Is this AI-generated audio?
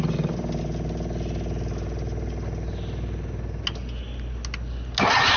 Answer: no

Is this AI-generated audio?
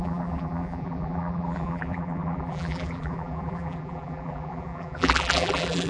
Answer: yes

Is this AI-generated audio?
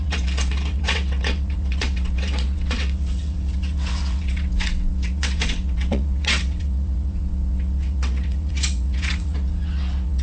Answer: yes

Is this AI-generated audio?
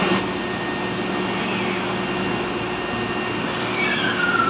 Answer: no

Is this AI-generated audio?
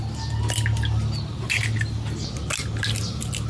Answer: no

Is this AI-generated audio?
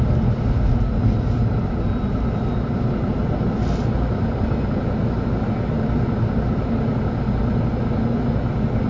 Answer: no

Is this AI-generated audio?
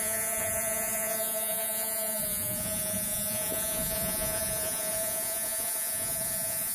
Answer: yes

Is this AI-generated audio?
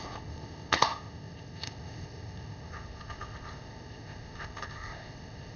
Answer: yes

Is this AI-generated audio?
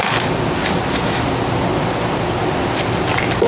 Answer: no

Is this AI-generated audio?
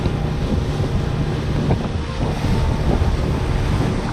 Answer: no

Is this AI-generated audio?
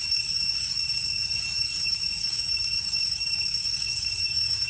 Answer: yes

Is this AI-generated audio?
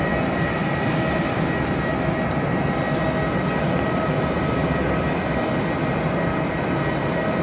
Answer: no